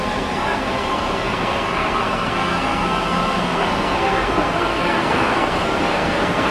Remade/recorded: remade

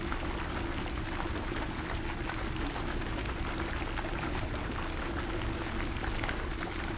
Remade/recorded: recorded